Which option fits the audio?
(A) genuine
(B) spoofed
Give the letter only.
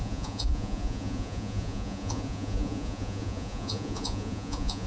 B